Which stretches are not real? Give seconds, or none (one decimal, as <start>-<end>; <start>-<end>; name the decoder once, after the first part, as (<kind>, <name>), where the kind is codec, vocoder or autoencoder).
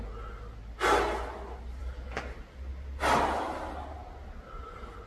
none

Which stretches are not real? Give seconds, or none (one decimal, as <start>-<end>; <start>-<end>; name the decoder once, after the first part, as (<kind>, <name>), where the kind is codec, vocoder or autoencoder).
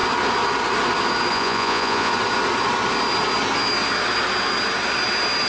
1.3-2.1 (vocoder, Vocos)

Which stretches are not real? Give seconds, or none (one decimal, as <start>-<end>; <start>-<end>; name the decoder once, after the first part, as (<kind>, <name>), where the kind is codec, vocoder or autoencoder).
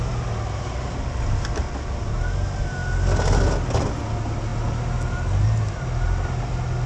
none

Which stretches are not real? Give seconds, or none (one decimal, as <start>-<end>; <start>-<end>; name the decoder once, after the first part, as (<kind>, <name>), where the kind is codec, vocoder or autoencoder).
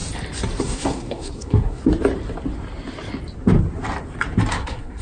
0.6-1.8 (codec, SNAC); 4.5-5.0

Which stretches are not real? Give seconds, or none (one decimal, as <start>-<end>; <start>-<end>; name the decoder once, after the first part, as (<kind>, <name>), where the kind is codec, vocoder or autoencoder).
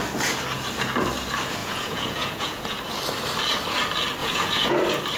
1.6-2.8 (vocoder, Vocos); 4.2-4.7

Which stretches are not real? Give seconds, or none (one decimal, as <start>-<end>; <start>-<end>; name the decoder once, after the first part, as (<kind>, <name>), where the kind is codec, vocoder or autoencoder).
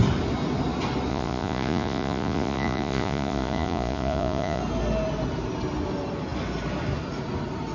1.1-4.6 (vocoder, Vocos)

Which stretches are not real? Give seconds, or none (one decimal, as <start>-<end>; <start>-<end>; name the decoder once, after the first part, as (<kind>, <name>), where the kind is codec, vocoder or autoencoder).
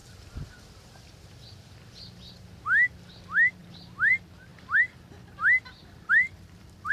3.6-4.1 (vocoder, BigVGAN v2); 4.5-5.3; 5.8-6.9